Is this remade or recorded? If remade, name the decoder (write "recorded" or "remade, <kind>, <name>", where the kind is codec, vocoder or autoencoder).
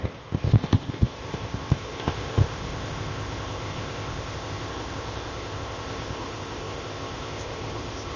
remade, codec, ZipCodec